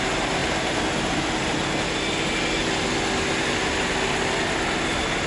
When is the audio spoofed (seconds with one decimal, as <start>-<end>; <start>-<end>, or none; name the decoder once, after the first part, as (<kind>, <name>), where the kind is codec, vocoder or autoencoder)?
none